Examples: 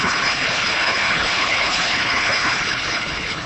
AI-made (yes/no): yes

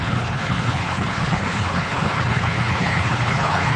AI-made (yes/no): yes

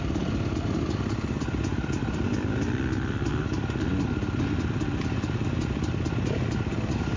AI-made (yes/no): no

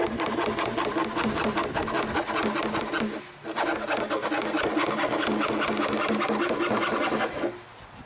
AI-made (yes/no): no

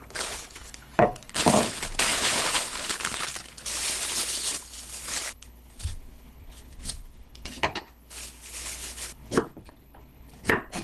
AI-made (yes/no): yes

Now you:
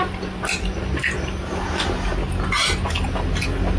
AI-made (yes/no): no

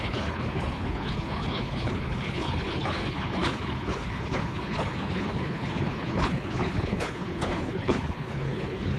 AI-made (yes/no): yes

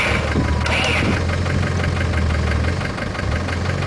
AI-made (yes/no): no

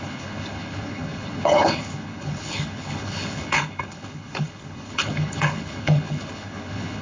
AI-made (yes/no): yes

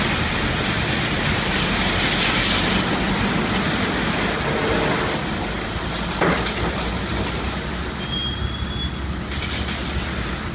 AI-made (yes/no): no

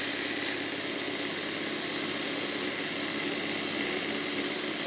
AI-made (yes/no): no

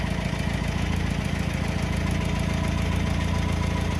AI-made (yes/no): no